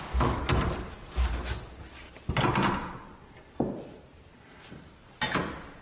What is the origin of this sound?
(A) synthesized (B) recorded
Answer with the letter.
B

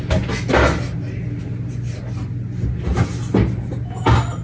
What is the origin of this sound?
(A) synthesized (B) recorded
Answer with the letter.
B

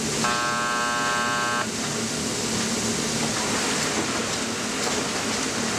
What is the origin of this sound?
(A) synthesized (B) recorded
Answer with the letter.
B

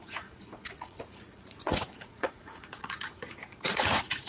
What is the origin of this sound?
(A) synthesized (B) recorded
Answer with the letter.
A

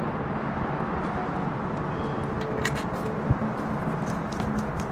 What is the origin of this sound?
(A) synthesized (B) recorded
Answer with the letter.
B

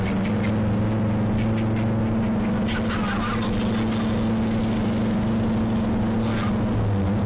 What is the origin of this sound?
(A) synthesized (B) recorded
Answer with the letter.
B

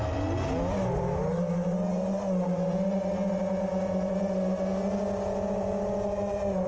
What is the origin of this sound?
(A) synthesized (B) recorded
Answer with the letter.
B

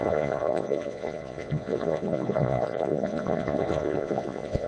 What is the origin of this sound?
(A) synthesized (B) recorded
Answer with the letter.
A